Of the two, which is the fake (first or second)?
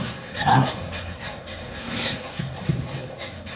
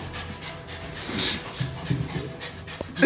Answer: first